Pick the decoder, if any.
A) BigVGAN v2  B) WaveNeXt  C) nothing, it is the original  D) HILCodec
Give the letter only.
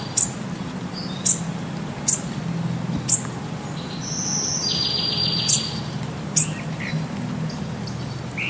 C